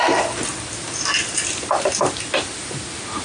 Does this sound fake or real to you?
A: real